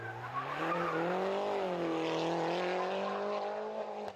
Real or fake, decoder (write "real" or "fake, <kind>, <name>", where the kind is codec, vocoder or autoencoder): real